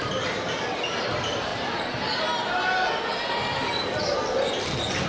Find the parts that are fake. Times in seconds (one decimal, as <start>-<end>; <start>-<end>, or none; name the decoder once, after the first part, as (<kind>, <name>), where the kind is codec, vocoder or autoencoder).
none

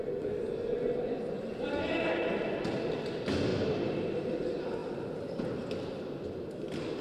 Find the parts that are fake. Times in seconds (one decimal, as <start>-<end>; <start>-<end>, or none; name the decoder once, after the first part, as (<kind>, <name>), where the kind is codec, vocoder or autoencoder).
3.5-4.3 (vocoder, BigVGAN v2)

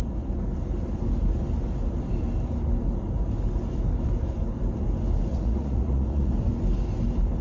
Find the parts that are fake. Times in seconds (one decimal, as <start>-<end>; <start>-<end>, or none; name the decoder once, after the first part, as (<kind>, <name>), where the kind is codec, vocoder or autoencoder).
5.3-6.3 (vocoder, Vocos)

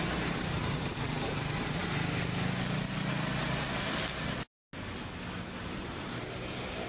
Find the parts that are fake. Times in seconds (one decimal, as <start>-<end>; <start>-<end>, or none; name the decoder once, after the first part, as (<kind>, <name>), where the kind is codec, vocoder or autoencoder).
0.0-1.8 (vocoder, BigVGAN v2); 5.6-6.9